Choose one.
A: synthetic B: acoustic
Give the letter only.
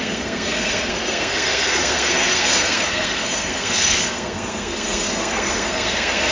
A